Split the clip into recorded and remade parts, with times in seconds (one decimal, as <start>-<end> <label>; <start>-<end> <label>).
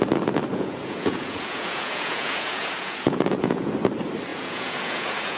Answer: 0.0-0.5 recorded; 0.5-3.7 remade; 3.7-4.3 recorded; 4.3-5.4 remade